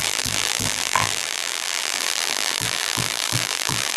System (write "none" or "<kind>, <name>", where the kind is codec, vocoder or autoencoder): vocoder, BigVGAN v2